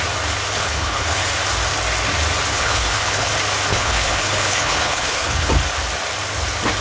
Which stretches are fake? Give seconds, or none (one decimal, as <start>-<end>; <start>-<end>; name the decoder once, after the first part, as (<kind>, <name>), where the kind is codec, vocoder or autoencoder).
0.6-1.2 (codec, HILCodec); 2.5-3.3; 3.7-5.5